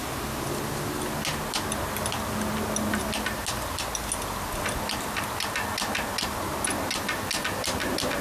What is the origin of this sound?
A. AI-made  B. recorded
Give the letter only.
B